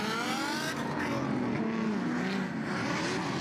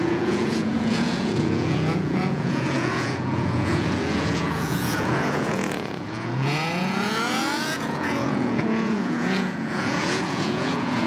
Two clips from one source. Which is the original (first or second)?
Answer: first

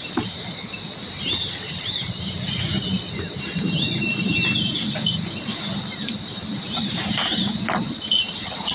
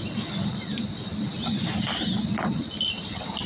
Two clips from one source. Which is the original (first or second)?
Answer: second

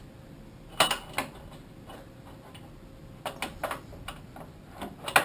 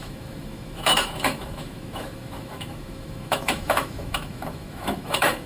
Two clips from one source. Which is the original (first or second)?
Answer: first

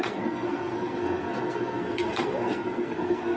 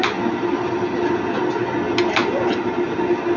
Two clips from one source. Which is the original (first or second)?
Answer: second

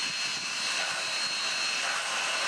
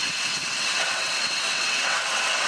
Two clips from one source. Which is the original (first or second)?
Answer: first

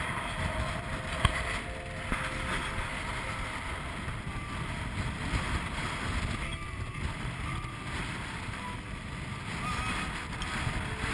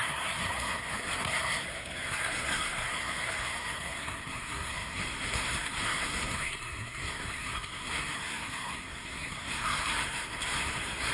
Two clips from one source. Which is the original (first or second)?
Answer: first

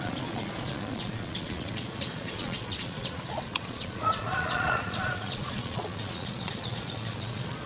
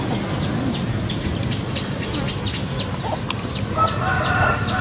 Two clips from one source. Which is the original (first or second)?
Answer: second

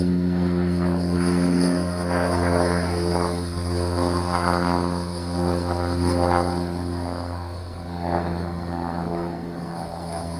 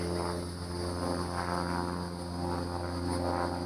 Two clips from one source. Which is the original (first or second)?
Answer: second